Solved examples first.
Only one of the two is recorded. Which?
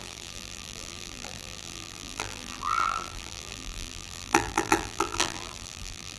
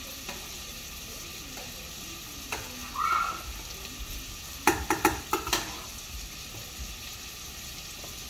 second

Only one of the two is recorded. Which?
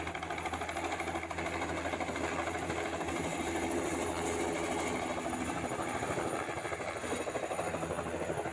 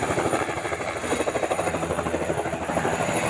first